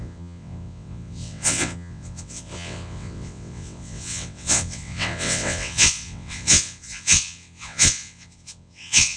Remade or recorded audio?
remade